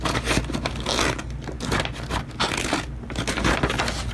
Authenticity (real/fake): real